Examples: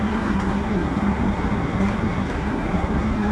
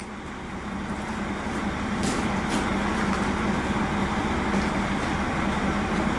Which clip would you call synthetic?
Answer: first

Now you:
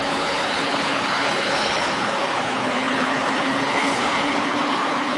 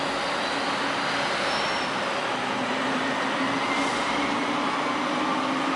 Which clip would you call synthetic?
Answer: first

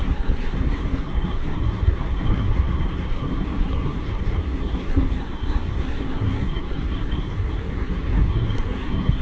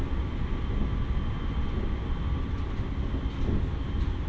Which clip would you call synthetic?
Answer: first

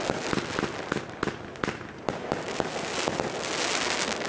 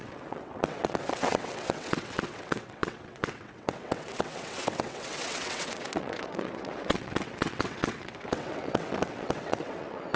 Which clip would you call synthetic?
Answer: second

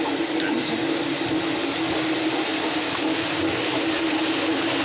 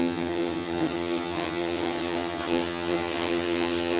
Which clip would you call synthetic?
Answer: second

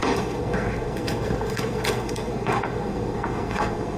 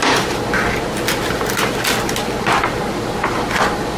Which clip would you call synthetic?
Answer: first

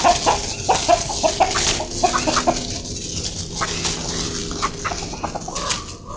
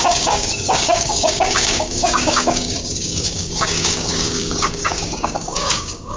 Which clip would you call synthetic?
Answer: second